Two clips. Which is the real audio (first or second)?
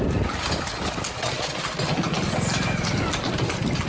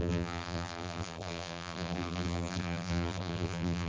first